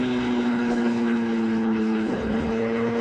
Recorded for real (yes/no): no